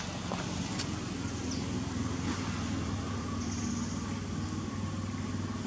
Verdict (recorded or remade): recorded